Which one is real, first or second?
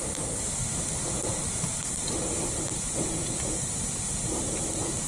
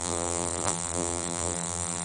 first